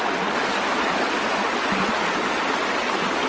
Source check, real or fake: real